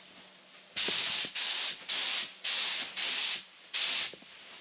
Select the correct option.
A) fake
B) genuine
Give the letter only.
B